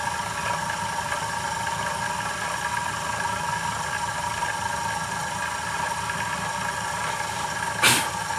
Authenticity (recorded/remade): recorded